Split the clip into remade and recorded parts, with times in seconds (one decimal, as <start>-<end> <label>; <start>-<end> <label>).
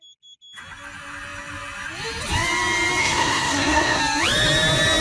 0.0-3.0 recorded; 3.0-4.0 remade; 4.0-5.0 recorded